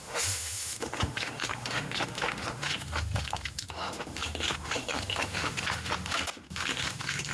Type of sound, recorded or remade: remade